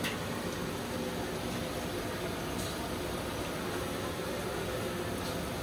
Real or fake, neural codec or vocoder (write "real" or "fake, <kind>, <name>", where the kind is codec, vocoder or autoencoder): real